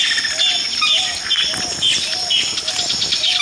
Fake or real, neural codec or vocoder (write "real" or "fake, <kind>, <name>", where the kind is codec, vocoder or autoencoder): real